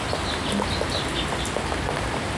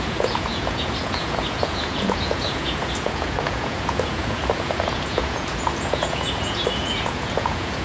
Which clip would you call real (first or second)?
first